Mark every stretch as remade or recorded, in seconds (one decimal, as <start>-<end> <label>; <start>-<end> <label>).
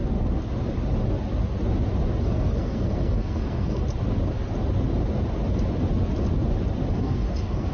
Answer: 0.0-2.2 recorded; 2.2-3.8 remade; 3.8-6.9 recorded; 6.9-7.7 remade